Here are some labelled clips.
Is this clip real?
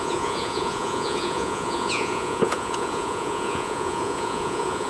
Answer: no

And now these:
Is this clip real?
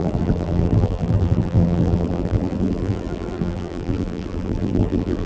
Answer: no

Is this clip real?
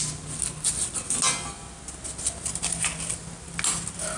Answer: yes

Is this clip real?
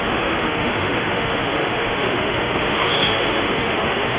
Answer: no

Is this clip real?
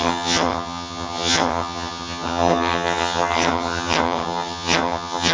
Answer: no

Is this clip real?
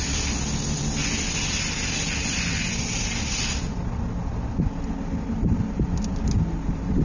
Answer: yes